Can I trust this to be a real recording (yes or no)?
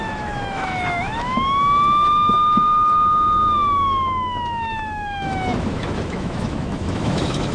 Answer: no